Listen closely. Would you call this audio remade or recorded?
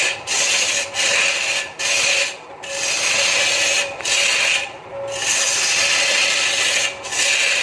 recorded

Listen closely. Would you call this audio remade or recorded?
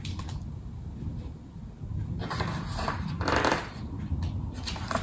recorded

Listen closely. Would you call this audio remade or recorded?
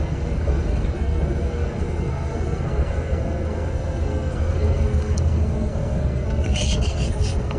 remade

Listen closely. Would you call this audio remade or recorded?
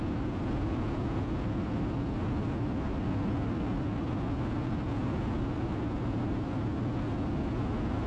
recorded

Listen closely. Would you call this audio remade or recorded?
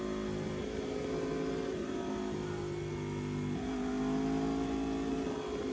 recorded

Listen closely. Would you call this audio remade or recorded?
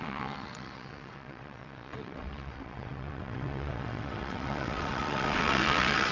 remade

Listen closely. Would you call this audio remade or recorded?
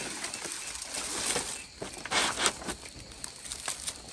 recorded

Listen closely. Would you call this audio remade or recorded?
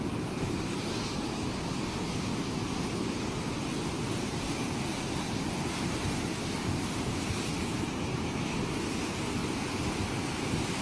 recorded